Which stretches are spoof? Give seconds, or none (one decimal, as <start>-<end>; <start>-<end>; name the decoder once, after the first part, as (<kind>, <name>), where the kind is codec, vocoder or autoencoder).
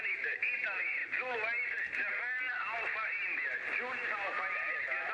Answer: none